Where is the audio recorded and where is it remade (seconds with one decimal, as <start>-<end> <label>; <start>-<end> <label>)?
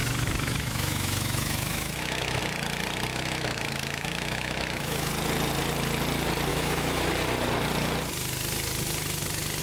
0.0-2.4 remade; 2.4-3.1 recorded; 3.1-5.1 remade; 5.1-6.5 recorded; 6.5-7.1 remade; 7.1-9.6 recorded